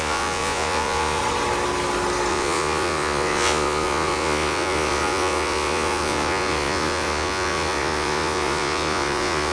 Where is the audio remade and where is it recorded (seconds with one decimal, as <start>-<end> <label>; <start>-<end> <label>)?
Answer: 0.0-1.2 remade; 1.2-2.3 recorded; 2.3-9.5 remade

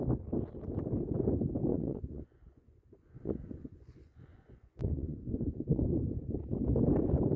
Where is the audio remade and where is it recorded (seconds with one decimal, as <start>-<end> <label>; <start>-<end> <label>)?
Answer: 0.0-1.7 recorded; 1.7-5.9 remade; 5.9-7.4 recorded